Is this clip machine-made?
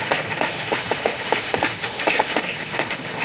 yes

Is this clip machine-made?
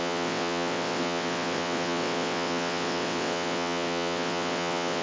yes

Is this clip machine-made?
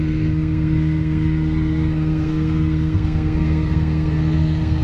yes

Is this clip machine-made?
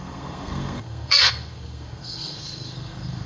yes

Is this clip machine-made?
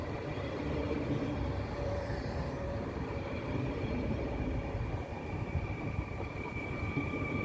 yes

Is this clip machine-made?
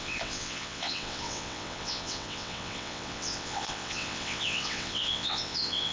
yes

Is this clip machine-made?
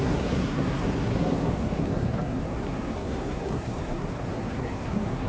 yes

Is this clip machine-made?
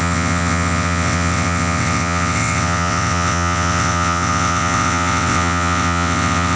yes